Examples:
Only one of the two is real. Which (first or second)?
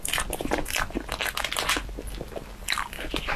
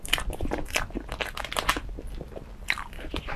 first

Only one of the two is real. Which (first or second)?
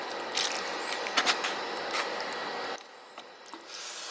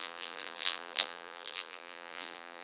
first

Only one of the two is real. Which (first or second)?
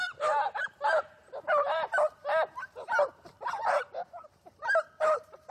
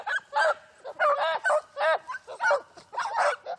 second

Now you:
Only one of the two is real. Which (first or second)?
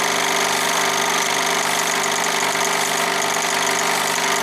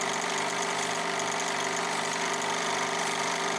first